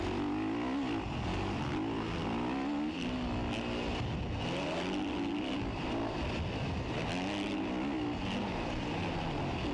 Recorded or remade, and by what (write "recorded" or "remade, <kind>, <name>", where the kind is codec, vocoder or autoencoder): recorded